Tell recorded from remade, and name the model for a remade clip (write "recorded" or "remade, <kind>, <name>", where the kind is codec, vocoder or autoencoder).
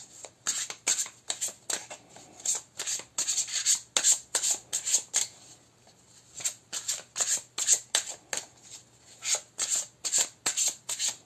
recorded